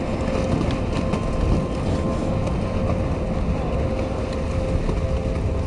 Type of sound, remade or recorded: recorded